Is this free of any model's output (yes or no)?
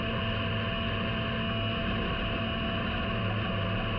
yes